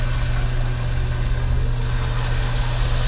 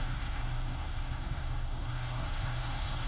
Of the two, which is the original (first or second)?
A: first